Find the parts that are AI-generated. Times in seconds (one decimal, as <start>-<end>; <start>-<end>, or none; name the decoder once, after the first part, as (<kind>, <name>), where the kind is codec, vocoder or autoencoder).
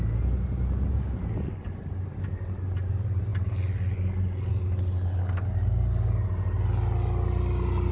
none